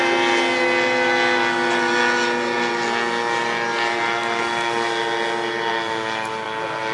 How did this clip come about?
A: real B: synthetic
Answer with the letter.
A